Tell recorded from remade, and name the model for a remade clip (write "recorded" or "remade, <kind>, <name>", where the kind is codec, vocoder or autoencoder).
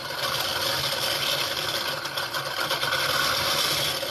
recorded